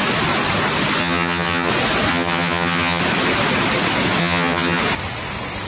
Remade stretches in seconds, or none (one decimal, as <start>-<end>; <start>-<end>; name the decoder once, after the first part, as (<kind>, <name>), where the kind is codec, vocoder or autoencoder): 1.0-1.7 (vocoder, HiFi-GAN); 2.1-3.0; 4.2-4.8